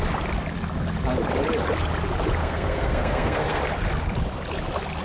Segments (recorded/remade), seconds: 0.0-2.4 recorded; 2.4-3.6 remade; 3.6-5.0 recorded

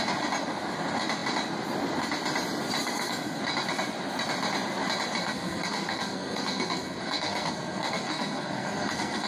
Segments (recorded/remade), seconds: 0.0-2.8 recorded; 2.8-3.4 remade; 3.4-5.2 recorded; 5.2-9.3 remade

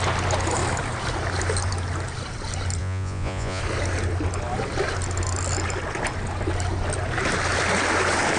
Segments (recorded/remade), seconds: 0.0-2.8 recorded; 2.8-3.6 remade; 3.6-8.4 recorded